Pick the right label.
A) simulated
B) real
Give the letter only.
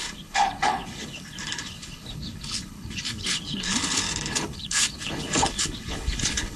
A